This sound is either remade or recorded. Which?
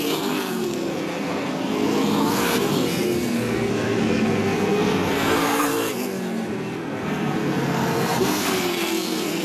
remade